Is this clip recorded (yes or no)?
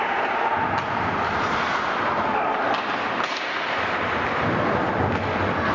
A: yes